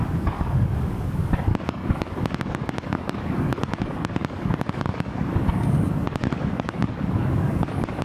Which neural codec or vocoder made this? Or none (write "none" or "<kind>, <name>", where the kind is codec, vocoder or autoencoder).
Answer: codec, DAC